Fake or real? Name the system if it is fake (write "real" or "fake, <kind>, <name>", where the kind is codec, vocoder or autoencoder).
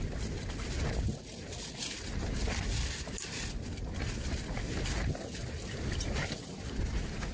real